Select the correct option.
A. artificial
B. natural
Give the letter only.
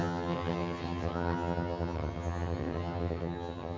A